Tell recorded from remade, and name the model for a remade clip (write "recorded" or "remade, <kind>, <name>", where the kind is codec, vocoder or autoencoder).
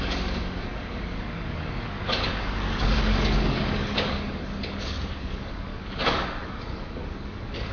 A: remade, codec, DAC